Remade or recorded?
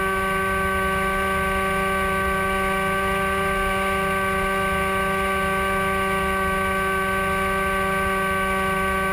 recorded